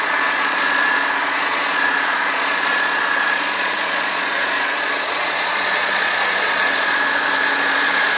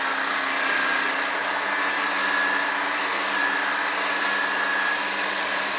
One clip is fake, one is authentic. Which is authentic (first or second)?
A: second